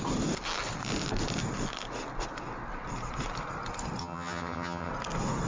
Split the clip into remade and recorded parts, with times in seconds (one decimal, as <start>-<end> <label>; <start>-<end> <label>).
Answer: 0.0-4.0 recorded; 4.0-4.9 remade; 4.9-5.5 recorded